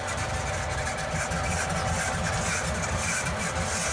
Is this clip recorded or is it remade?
recorded